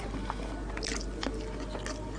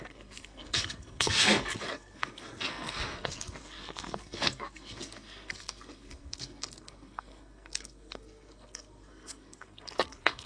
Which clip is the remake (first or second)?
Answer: second